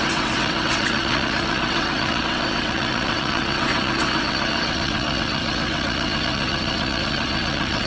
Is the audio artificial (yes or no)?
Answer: yes